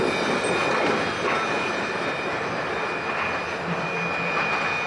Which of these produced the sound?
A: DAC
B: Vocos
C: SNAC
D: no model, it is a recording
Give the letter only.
D